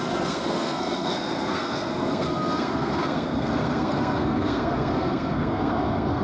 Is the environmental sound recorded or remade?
remade